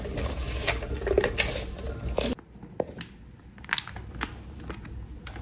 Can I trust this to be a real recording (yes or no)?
yes